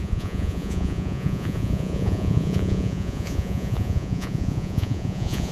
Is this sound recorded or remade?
remade